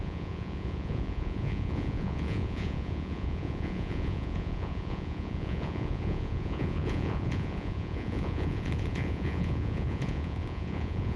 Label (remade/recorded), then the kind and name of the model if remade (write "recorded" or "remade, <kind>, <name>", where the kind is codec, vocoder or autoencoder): remade, vocoder, Vocos